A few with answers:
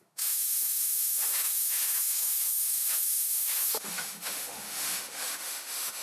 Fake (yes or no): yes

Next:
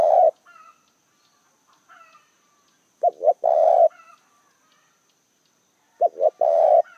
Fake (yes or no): no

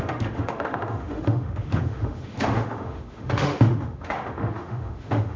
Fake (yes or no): yes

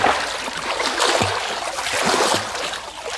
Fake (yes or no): no